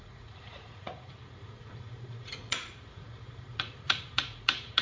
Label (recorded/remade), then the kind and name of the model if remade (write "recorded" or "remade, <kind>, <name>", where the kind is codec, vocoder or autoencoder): remade, vocoder, Vocos